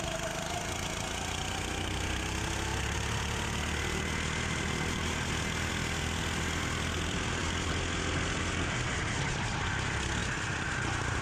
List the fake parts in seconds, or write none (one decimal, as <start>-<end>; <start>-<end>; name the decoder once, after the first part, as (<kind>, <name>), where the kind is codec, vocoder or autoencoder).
none